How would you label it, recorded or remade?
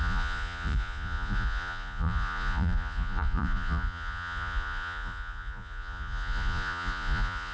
remade